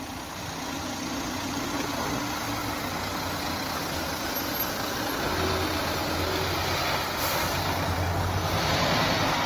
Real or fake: real